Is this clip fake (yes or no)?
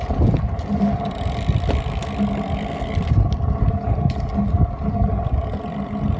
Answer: no